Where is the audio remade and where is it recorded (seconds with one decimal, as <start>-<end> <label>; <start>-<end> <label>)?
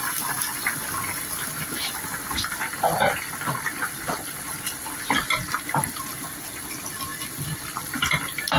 0.0-8.6 recorded